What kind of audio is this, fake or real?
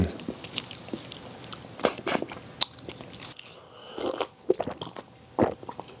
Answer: real